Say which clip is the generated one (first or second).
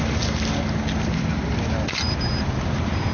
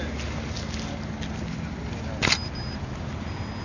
first